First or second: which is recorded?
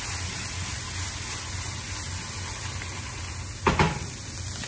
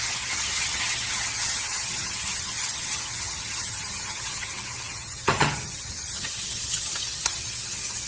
first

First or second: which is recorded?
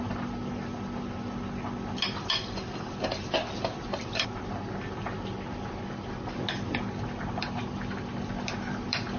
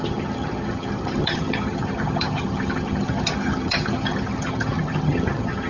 first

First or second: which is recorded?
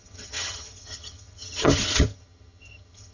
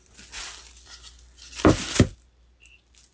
second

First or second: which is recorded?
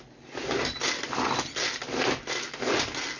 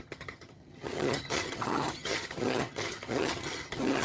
first